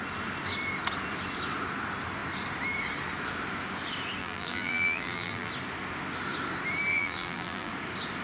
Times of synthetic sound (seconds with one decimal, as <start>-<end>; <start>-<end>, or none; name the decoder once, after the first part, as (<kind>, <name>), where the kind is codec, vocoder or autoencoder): 4.2-5.5 (vocoder, BigVGAN v2); 6.9-7.7